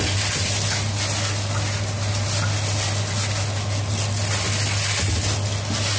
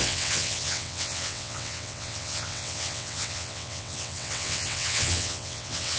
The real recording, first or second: first